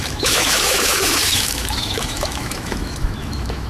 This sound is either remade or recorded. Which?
remade